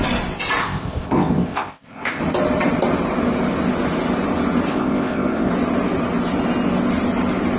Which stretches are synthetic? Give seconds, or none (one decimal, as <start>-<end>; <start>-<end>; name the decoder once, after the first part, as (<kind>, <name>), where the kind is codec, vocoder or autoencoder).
0.6-2.2 (codec, ZipCodec); 4.7-5.5